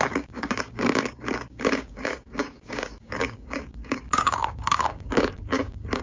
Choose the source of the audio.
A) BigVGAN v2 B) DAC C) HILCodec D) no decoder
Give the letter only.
B